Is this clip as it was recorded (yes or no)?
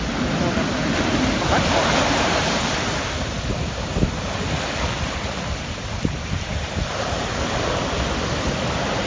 yes